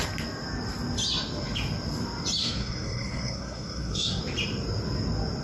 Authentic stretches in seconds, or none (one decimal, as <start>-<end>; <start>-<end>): 0.0-2.4; 4.2-5.4